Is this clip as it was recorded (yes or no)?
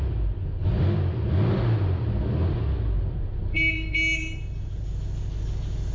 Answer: yes